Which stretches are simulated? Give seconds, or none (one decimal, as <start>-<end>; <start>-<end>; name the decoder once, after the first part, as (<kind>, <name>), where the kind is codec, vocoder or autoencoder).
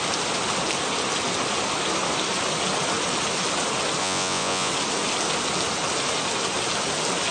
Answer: 4.0-4.7 (vocoder, Vocos)